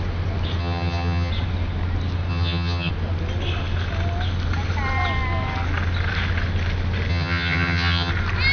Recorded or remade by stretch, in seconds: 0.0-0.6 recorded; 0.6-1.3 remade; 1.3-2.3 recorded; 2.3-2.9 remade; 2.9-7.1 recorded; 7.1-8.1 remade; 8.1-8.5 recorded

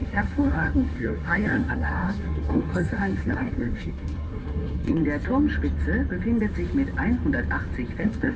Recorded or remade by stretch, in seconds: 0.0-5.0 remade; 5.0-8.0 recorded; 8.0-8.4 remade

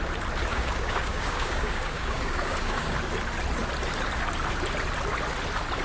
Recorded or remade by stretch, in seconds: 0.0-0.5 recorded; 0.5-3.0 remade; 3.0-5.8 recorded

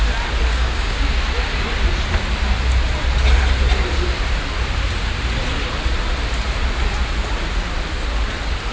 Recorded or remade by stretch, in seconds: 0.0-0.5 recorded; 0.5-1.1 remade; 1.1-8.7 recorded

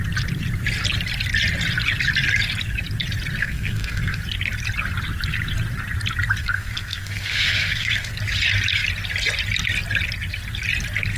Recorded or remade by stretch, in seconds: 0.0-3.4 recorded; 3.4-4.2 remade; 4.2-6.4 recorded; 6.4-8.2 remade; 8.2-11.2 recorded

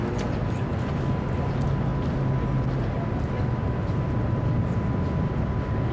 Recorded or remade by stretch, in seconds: 0.0-5.9 recorded

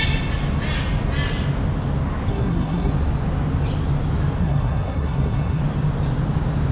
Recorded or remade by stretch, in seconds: 0.0-2.3 recorded; 2.3-2.9 remade; 2.9-4.4 recorded; 4.4-5.6 remade; 5.6-6.7 recorded

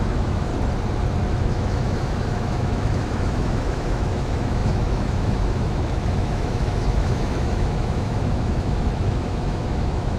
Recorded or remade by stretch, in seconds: 0.0-0.5 remade; 0.5-1.3 recorded; 1.3-10.2 remade